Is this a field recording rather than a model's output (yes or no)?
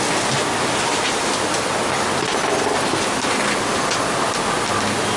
yes